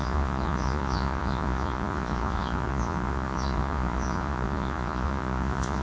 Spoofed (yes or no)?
yes